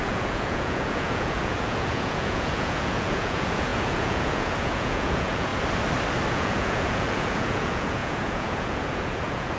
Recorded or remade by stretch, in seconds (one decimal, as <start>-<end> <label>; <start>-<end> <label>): 0.0-5.5 remade; 5.5-6.3 recorded; 6.3-9.6 remade